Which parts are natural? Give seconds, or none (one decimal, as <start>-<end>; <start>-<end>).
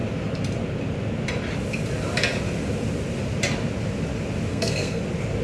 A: 0.0-4.5; 5.0-5.4